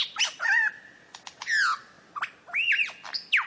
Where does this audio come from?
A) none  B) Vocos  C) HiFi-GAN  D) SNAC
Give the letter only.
A